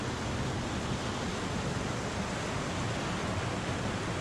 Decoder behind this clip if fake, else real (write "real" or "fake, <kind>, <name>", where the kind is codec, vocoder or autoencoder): real